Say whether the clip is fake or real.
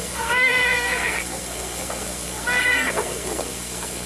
fake